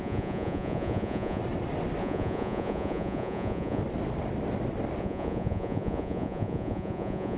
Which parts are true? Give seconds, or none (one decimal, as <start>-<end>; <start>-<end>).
1.4-2.0; 3.8-5.0